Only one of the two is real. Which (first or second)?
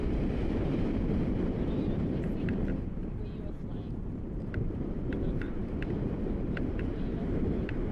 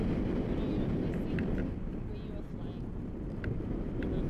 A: second